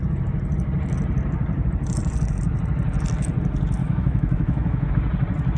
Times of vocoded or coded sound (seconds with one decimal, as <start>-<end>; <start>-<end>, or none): 3.8-4.9